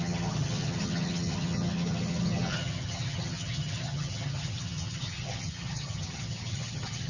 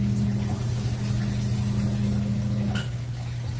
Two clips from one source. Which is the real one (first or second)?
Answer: second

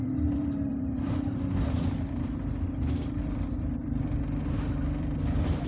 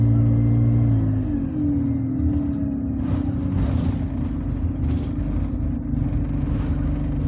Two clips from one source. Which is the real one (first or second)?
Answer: second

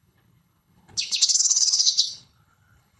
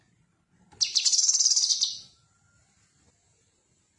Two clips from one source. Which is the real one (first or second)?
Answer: second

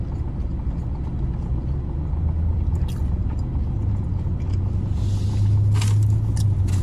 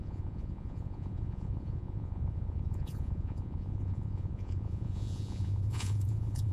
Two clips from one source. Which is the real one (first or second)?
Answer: first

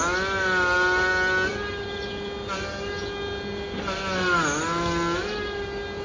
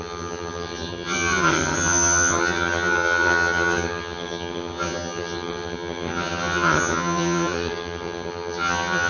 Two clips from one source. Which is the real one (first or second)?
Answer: first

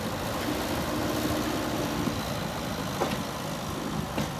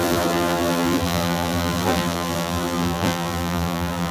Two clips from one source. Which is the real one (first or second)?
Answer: first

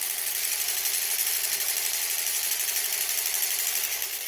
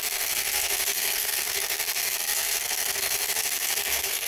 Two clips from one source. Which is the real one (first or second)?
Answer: first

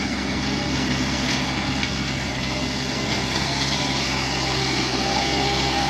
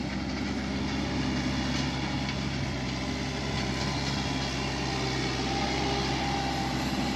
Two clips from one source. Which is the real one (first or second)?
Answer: second